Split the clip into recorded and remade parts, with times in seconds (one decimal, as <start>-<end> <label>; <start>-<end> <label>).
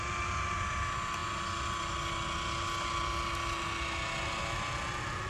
0.0-5.3 recorded